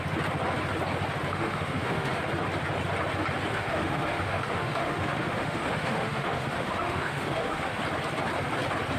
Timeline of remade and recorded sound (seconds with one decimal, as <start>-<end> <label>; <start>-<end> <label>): 0.0-1.3 recorded; 1.3-2.2 remade; 2.2-3.5 recorded; 3.5-7.8 remade; 7.8-9.0 recorded